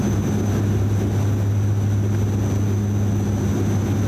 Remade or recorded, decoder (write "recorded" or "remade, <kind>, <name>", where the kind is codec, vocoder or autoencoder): recorded